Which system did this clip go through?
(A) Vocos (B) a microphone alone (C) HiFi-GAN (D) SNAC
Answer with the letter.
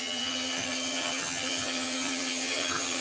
C